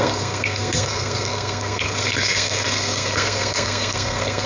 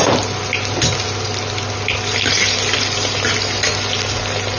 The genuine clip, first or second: second